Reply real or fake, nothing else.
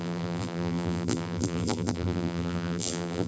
fake